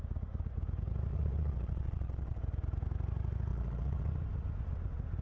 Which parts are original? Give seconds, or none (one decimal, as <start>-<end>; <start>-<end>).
0.0-1.1; 2.4-3.5; 4.1-5.2